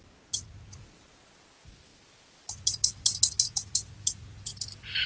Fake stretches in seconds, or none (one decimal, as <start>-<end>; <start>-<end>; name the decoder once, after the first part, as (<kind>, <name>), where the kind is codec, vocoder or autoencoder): none